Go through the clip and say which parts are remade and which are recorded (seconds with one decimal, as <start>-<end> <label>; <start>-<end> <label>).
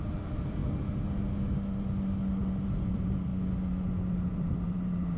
0.0-0.6 remade; 0.6-2.4 recorded; 2.4-3.3 remade; 3.3-4.1 recorded; 4.1-5.2 remade